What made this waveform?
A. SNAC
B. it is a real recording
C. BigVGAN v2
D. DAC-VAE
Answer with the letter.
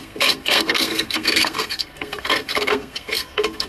A